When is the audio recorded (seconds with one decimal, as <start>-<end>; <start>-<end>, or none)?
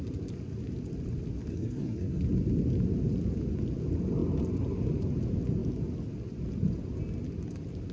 0.0-1.5; 2.2-7.9